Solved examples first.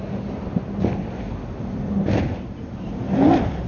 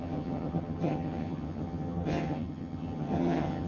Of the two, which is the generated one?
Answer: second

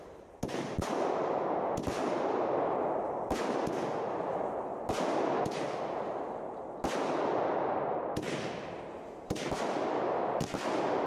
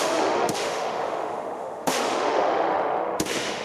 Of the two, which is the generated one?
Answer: second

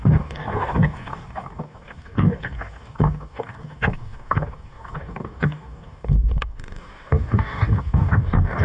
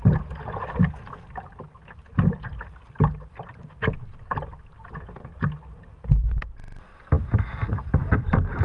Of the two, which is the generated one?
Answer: first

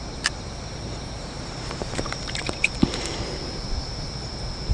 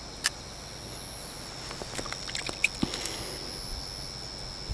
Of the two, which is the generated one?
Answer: first